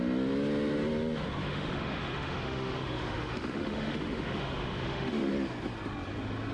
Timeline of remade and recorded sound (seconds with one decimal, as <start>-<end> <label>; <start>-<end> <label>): 0.0-1.4 recorded; 1.4-5.3 remade; 5.3-6.5 recorded

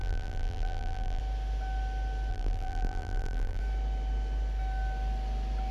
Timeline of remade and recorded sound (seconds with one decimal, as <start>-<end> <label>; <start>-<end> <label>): 0.0-1.2 remade; 1.2-2.3 recorded; 2.3-3.6 remade; 3.6-5.7 recorded